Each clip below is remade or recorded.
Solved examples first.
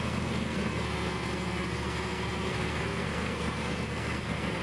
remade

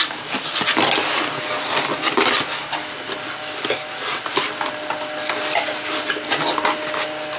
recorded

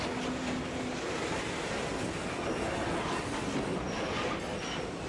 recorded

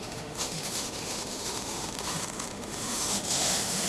remade